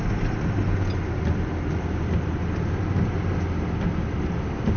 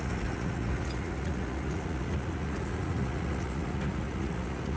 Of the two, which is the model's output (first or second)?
second